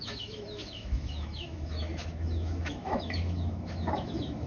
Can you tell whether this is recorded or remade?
remade